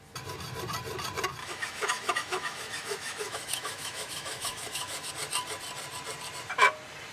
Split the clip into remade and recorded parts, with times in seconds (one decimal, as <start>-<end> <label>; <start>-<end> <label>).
0.0-1.4 recorded; 1.4-5.1 remade; 5.1-7.1 recorded